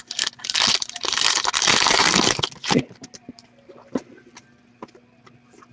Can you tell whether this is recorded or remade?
recorded